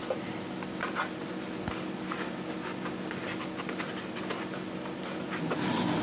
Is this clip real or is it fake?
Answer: real